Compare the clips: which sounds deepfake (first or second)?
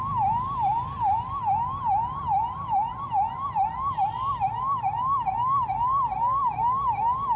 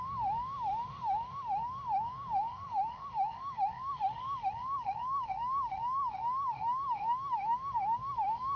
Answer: second